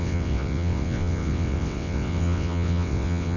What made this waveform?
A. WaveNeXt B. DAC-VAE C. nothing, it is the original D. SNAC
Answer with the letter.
A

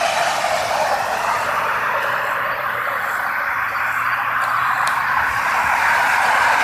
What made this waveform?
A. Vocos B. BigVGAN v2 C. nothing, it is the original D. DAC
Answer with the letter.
C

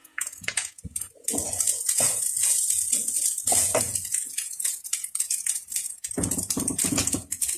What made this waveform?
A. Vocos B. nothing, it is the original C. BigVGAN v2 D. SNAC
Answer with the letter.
A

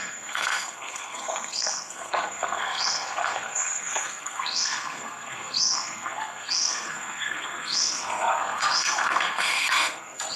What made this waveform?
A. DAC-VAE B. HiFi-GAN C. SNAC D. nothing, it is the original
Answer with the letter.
C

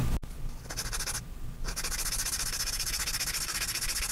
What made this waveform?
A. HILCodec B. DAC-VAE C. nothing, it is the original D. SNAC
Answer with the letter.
C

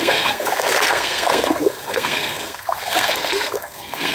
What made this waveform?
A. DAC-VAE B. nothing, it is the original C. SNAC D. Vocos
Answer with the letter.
C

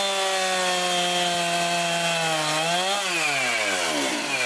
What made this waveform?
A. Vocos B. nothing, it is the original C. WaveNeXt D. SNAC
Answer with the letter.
B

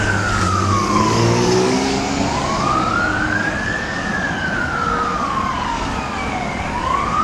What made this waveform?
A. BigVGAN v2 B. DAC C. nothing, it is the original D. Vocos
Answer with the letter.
B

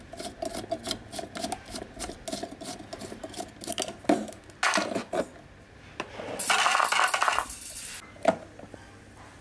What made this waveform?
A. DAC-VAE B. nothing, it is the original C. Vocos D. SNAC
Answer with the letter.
B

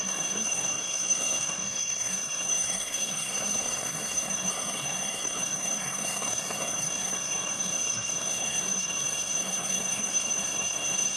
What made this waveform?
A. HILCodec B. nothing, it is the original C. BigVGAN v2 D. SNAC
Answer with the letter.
D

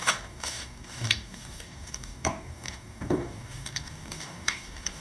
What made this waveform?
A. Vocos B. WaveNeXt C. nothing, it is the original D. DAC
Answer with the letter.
D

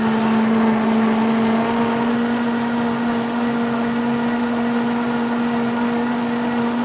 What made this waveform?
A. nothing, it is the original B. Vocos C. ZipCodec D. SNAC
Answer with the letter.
A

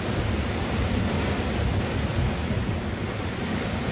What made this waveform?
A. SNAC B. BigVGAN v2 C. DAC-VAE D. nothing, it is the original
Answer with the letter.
D